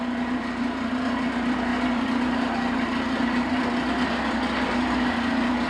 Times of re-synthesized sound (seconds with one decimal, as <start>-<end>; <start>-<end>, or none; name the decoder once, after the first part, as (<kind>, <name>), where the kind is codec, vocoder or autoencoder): none

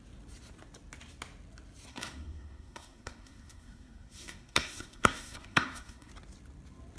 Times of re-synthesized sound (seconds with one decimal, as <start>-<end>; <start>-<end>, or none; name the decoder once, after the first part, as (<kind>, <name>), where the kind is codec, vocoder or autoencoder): 1.9-6.1 (codec, SNAC)

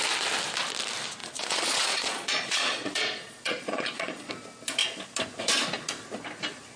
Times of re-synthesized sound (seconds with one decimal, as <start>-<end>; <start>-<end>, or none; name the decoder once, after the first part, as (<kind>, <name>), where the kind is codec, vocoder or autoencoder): 1.2-4.3 (vocoder, Vocos)

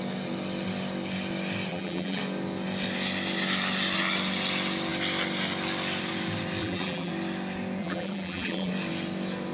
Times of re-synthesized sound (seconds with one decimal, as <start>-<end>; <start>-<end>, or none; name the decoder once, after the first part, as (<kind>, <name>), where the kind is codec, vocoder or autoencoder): 1.7-2.2 (vocoder, BigVGAN v2); 6.6-7.1; 7.8-8.7

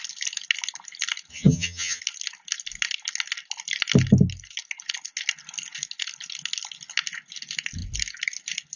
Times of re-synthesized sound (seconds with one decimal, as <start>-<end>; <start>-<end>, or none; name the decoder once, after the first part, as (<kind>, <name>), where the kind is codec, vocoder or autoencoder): 1.3-2.0 (vocoder, HiFi-GAN)